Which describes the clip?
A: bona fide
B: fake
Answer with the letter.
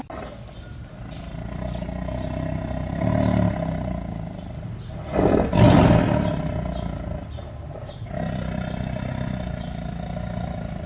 A